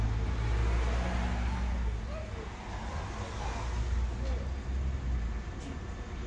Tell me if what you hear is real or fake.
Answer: real